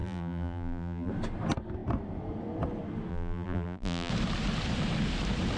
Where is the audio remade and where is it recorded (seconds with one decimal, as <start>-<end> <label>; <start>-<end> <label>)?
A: 0.0-1.1 remade; 1.1-3.1 recorded; 3.1-4.1 remade; 4.1-5.6 recorded